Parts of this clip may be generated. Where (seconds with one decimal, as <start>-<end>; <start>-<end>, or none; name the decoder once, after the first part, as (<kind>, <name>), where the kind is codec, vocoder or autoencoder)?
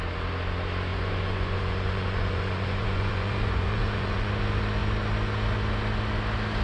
0.9-4.3 (vocoder, Vocos)